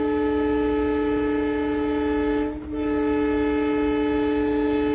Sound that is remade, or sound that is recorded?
recorded